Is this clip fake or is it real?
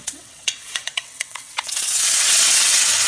fake